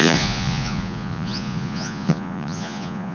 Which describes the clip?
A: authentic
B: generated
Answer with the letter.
B